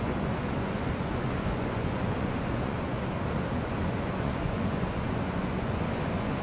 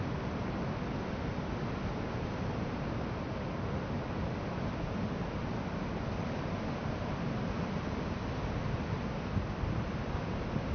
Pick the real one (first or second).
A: second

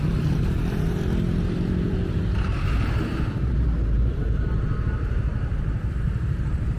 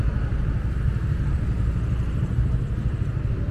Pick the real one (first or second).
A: second